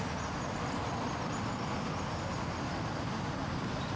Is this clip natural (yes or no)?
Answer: yes